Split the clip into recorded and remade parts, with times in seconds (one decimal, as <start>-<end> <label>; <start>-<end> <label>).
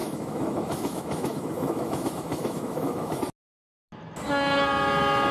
0.0-3.2 remade; 3.2-5.3 recorded